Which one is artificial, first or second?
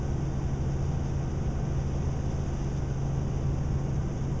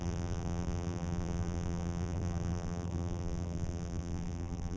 second